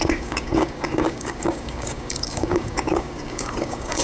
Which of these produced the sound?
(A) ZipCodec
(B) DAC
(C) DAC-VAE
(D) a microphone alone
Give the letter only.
B